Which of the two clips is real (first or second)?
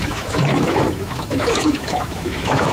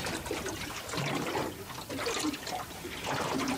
second